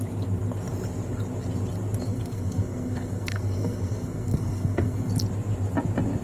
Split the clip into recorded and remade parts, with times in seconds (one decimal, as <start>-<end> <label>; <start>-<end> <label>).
0.0-2.1 recorded; 2.1-5.1 remade; 5.1-6.2 recorded